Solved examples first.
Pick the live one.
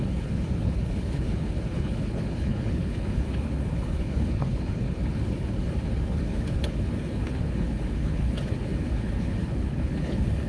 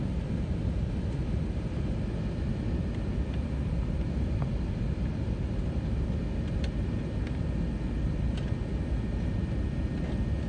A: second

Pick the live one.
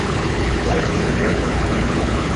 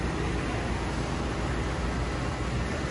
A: second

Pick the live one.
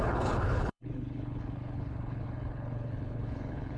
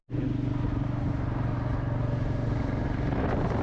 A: second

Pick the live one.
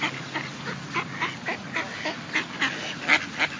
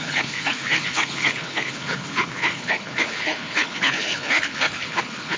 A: first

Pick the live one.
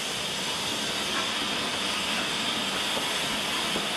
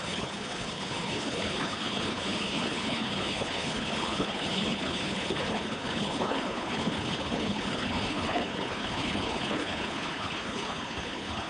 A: first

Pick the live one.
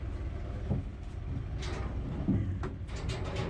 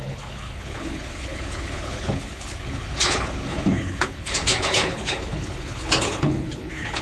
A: first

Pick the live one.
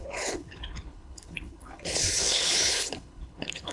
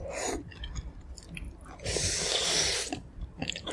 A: second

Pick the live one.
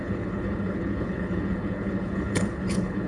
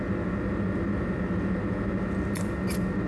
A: second